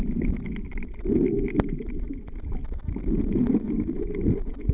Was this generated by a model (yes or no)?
no